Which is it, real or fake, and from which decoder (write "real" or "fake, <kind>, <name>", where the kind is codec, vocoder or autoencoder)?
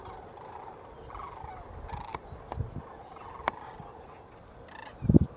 real